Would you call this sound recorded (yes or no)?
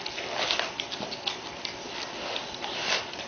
yes